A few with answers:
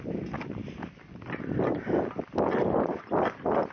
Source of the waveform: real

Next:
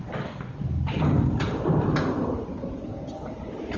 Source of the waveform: fake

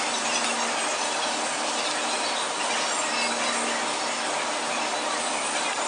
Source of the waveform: real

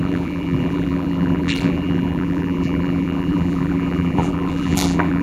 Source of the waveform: fake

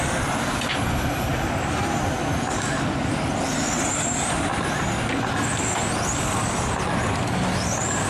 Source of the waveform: real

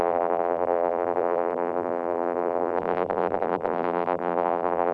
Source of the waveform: fake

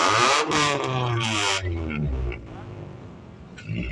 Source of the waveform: fake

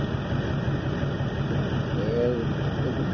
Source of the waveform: real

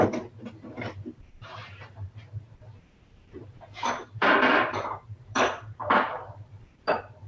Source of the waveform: fake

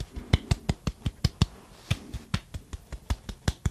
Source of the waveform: real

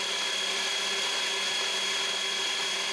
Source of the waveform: real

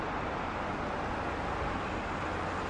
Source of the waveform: real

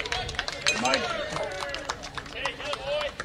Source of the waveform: fake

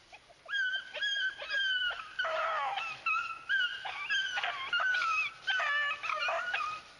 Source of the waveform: real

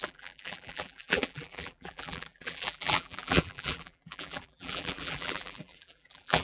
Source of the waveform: fake